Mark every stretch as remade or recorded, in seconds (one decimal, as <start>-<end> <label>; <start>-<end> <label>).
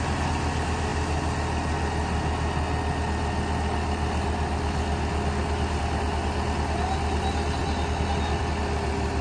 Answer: 0.0-9.2 recorded